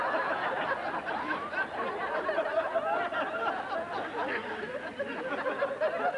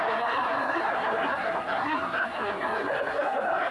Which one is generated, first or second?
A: second